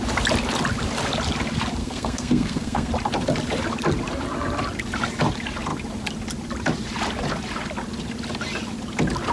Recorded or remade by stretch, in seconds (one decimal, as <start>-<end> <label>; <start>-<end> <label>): 0.0-1.8 recorded; 1.8-2.9 remade; 2.9-9.3 recorded